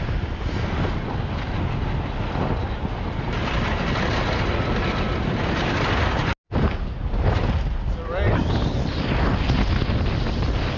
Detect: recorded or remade recorded